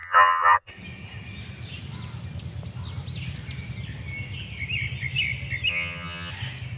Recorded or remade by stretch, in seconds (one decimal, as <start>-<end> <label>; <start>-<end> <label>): 0.0-0.7 remade; 0.7-5.7 recorded; 5.7-6.3 remade; 6.3-6.8 recorded